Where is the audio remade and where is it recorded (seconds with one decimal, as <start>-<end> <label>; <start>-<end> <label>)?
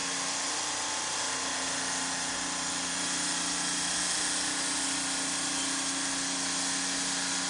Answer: 0.0-7.5 recorded